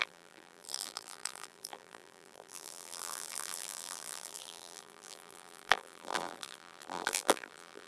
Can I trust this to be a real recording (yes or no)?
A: no